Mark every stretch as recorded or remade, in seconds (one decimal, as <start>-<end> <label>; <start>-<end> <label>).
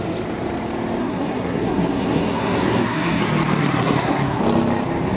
0.0-1.0 recorded; 1.0-3.2 remade; 3.2-3.6 recorded; 3.6-4.4 remade; 4.4-5.2 recorded